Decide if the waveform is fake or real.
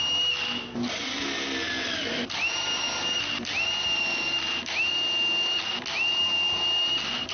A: real